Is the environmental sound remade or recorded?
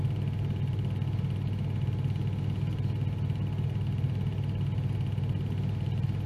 recorded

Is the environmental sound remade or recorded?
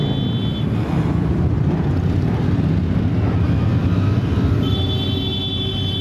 recorded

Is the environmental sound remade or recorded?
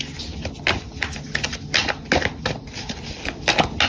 recorded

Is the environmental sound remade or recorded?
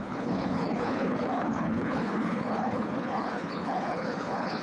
remade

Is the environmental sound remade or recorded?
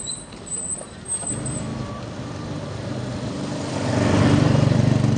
remade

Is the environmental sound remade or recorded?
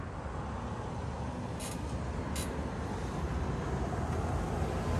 recorded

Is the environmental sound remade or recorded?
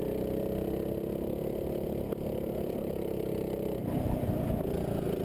remade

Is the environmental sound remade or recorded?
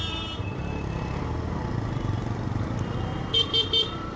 remade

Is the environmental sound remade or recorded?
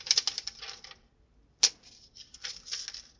recorded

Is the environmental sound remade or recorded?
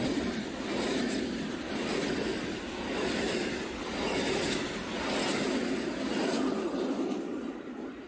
recorded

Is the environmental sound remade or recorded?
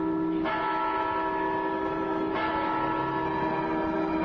recorded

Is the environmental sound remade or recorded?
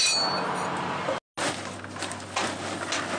recorded